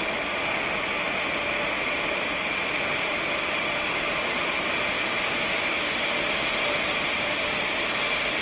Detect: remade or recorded recorded